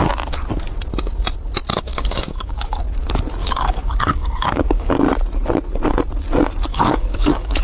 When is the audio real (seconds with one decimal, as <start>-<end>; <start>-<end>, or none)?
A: 0.0-1.7; 2.8-3.4; 4.9-6.7